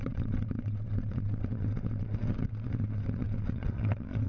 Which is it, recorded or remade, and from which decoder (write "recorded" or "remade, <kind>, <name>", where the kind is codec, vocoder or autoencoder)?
remade, vocoder, WaveNeXt